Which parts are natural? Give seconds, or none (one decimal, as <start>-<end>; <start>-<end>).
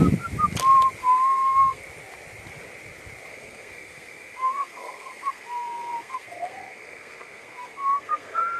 0.0-1.0; 1.8-3.3